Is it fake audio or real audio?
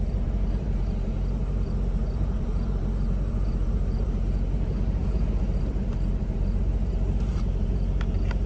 fake